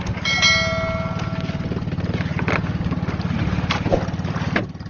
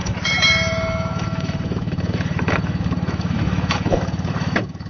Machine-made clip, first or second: second